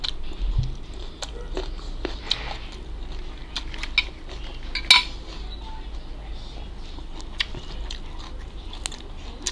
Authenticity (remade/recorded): recorded